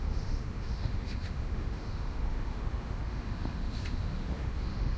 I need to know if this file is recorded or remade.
remade